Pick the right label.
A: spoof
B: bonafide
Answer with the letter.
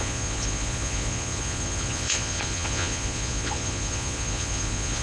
A